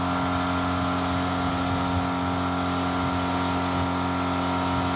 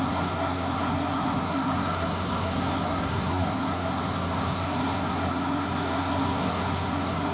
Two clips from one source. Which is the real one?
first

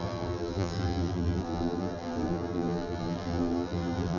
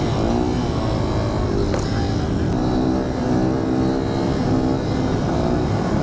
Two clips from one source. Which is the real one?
second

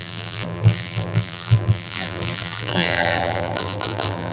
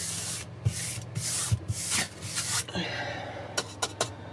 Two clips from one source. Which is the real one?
second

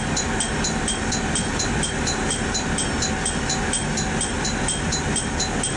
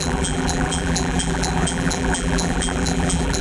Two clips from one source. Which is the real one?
first